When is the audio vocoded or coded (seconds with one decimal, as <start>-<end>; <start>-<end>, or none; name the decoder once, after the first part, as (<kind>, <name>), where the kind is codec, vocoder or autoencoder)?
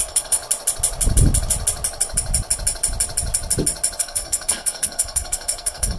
0.0-0.4 (codec, SNAC); 4.0-6.0